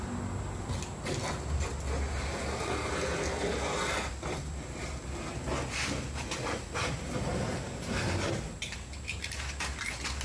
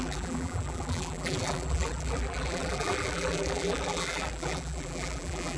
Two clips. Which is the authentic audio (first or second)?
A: first